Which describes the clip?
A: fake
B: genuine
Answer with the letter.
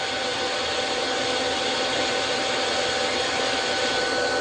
B